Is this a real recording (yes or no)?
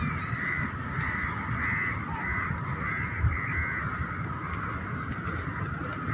yes